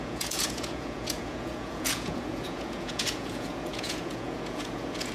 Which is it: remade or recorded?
remade